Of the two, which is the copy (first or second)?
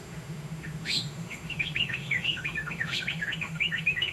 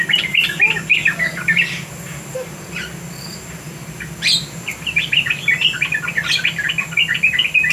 first